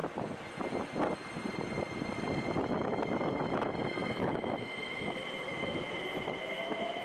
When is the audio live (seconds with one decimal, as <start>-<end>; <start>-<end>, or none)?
0.0-2.6